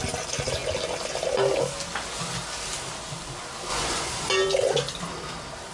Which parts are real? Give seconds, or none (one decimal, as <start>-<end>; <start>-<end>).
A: 0.0-3.7; 4.3-5.7